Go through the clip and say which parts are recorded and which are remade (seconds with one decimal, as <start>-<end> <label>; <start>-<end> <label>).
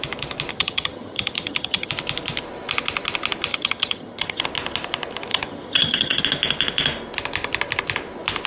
0.0-0.5 recorded; 0.5-1.9 remade; 1.9-3.5 recorded; 3.5-4.4 remade; 4.4-5.3 recorded; 5.3-6.2 remade; 6.2-8.5 recorded